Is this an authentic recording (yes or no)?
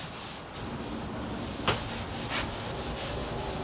yes